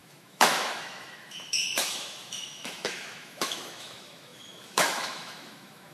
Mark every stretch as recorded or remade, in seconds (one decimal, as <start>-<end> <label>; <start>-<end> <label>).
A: 0.0-5.9 remade

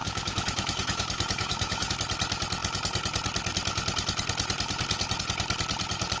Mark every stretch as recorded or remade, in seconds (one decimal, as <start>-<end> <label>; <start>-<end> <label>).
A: 0.0-1.9 remade; 1.9-6.2 recorded

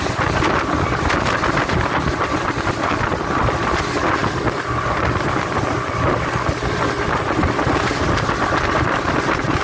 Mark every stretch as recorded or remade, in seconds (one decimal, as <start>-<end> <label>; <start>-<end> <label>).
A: 0.0-9.6 recorded

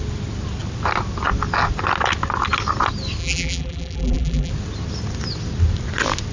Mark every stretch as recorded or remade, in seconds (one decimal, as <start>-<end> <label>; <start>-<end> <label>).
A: 0.0-3.2 recorded; 3.2-4.5 remade; 4.5-6.3 recorded

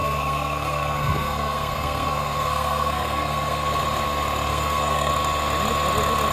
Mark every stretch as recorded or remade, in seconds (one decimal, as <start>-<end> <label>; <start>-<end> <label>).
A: 0.0-3.8 remade; 3.8-4.5 recorded; 4.5-5.1 remade; 5.1-6.3 recorded

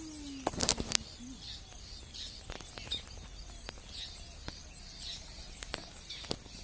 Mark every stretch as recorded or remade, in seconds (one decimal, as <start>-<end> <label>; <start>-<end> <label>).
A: 0.0-6.6 recorded